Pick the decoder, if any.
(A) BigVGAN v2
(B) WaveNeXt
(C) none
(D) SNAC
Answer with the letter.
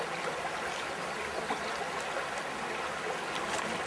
C